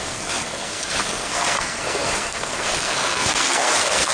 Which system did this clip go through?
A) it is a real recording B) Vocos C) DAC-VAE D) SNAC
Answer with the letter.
D